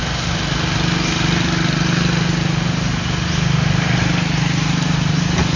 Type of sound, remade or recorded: recorded